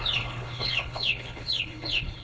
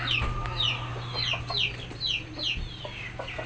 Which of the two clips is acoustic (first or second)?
second